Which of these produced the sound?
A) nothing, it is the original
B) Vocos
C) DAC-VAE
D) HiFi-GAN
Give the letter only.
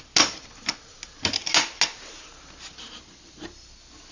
A